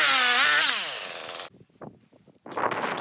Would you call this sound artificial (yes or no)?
no